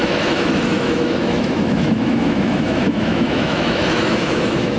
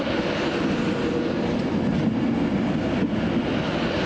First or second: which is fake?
first